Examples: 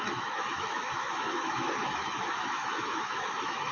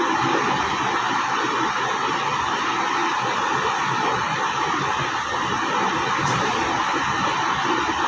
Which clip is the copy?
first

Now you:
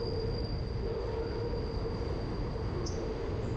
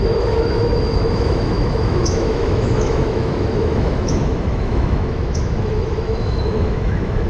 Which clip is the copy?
second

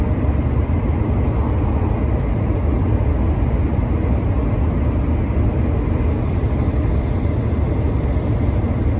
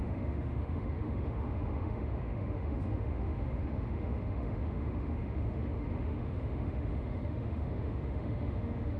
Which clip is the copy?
second